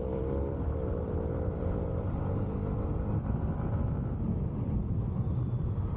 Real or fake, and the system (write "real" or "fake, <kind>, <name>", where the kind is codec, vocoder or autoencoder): fake, vocoder, BigVGAN v2